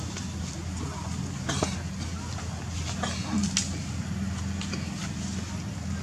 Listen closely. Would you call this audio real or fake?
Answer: real